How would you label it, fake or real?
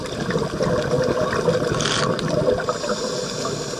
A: real